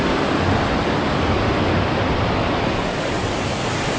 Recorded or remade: recorded